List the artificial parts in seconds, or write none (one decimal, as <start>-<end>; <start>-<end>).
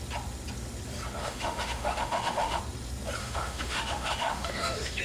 1.2-2.6; 3.2-5.0